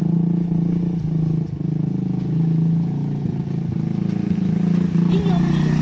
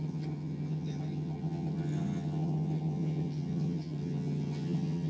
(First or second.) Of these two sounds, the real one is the first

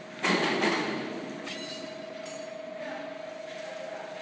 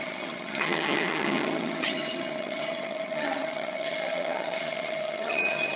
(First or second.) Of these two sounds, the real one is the first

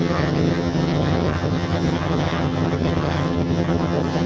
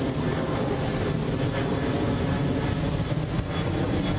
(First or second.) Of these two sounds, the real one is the second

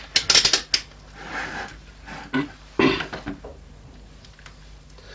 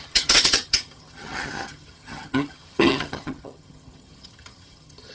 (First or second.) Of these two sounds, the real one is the first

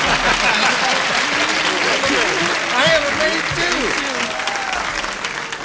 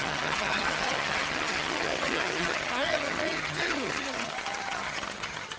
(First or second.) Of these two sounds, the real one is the first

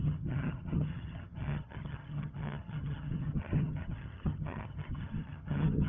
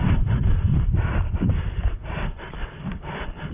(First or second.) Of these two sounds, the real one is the second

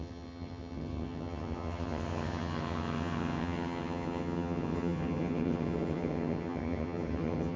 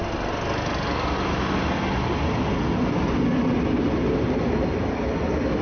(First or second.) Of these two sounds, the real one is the second